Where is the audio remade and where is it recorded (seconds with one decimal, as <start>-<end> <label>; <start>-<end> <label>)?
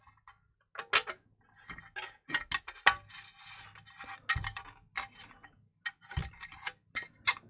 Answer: 0.0-7.5 recorded